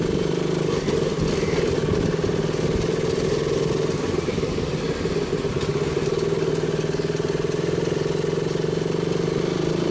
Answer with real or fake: real